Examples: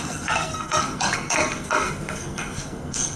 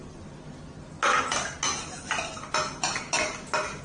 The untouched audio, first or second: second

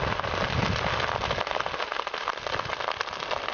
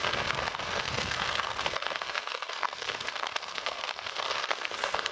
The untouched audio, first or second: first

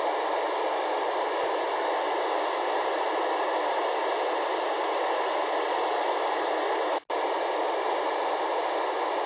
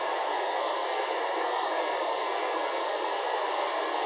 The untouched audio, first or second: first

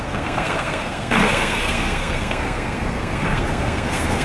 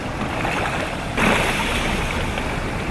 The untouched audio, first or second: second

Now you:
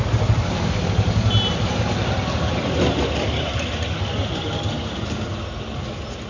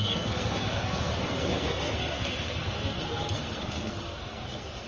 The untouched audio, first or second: first